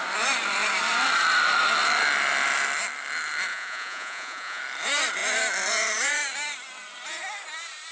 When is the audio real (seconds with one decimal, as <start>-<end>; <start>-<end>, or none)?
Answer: 0.0-3.5; 4.6-7.9